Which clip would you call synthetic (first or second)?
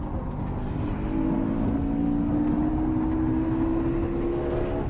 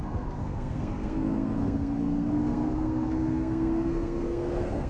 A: second